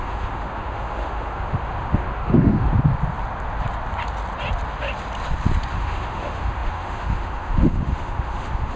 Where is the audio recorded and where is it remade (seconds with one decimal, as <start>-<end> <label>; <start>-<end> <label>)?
0.0-2.7 remade; 2.7-5.7 recorded; 5.7-8.8 remade